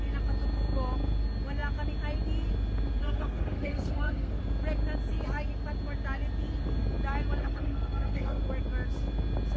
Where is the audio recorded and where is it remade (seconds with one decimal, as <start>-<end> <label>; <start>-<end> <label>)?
0.0-3.0 recorded; 3.0-4.4 remade; 4.4-7.4 recorded; 7.4-8.4 remade; 8.4-9.6 recorded